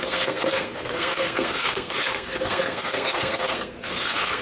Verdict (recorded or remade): remade